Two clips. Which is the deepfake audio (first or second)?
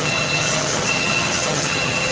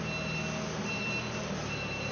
first